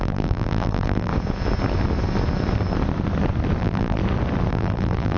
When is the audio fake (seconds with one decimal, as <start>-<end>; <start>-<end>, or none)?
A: 0.0-1.1; 3.6-4.0; 4.5-5.2